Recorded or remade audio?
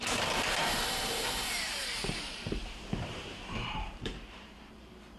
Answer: remade